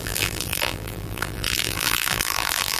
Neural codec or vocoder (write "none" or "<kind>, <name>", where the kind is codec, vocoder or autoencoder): vocoder, BigVGAN v2